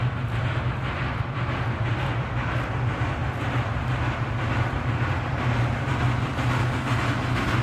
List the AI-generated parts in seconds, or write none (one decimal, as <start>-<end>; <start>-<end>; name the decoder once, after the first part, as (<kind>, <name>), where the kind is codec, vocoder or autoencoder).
none